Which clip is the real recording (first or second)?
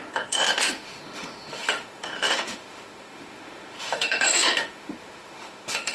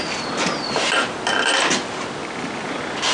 second